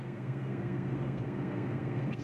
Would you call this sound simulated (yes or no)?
yes